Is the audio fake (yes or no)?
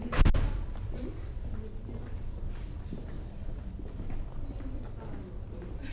no